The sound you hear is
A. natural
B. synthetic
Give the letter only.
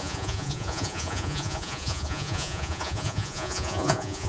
B